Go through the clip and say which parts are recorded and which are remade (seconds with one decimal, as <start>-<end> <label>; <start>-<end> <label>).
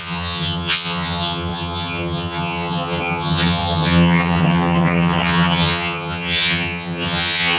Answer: 0.0-7.6 remade